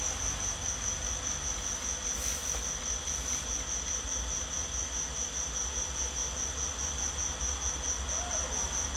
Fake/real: real